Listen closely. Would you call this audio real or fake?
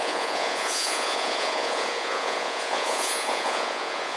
fake